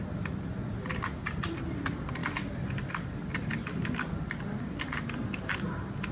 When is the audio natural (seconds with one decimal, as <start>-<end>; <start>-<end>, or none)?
0.0-6.1